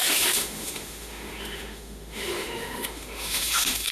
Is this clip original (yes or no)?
no